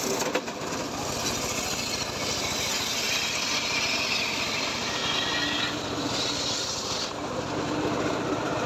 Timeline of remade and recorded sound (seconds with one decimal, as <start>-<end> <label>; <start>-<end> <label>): 0.0-5.0 remade; 5.0-5.6 recorded; 5.6-8.7 remade

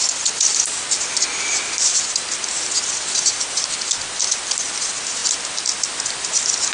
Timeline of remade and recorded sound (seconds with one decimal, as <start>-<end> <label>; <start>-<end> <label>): 0.0-6.7 recorded

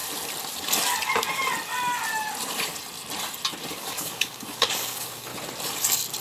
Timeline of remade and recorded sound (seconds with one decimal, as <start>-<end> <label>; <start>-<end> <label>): 0.0-3.7 recorded; 3.7-5.3 remade; 5.3-6.2 recorded